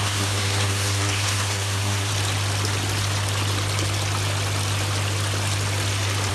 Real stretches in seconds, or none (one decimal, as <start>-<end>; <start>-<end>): 2.1-6.3